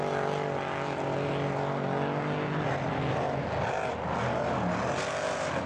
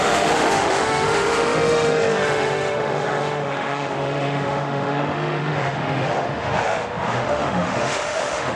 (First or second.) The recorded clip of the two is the first